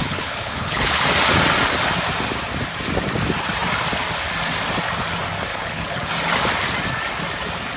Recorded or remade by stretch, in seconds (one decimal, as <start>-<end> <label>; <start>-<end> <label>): 0.0-1.0 remade; 1.0-5.5 recorded; 5.5-6.1 remade; 6.1-7.8 recorded